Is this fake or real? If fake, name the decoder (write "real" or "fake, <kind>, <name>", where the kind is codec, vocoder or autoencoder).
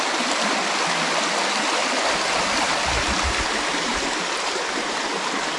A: fake, vocoder, BigVGAN v2